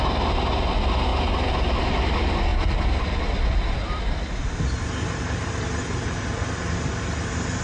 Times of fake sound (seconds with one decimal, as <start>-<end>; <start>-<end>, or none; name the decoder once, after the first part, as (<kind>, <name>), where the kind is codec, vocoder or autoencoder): 1.1-2.0 (vocoder, BigVGAN v2); 2.5-4.0